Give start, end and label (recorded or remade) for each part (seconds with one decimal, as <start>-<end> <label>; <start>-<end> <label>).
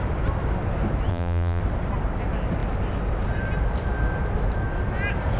0.0-1.1 recorded; 1.1-1.6 remade; 1.6-5.4 recorded